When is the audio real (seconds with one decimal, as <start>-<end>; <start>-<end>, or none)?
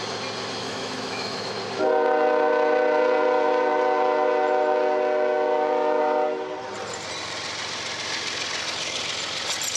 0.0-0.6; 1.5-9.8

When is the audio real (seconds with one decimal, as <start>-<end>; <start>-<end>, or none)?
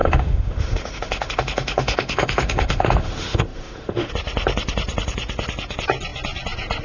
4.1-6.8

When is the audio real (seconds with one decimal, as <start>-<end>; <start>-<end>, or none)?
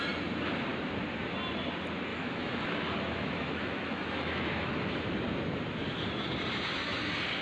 0.0-2.1; 4.9-7.4